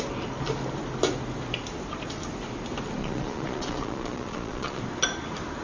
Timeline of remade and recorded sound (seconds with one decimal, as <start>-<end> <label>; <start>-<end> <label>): 0.0-3.0 recorded; 3.0-4.8 remade; 4.8-5.6 recorded